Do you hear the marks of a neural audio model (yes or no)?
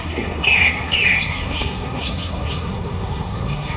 yes